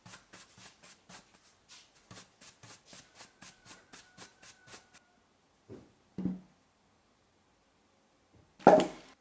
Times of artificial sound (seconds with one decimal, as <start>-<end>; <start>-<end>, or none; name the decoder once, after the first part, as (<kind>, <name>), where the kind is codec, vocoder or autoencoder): none